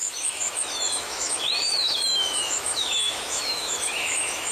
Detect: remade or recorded remade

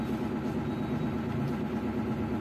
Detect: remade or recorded recorded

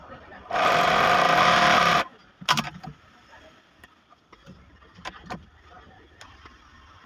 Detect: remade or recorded recorded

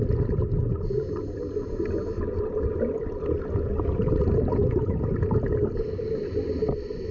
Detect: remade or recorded recorded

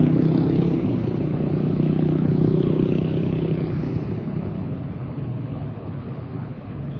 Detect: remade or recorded remade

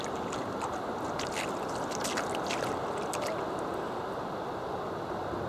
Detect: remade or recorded recorded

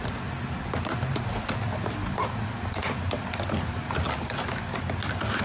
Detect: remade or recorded recorded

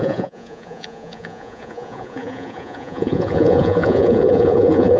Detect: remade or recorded remade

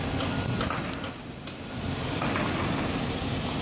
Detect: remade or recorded recorded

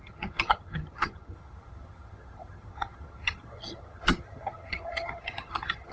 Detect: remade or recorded remade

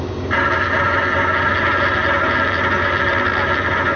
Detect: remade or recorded recorded